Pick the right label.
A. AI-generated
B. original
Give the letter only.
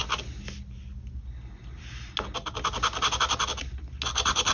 B